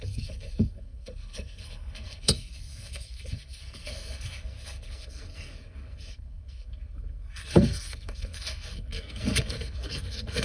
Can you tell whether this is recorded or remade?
remade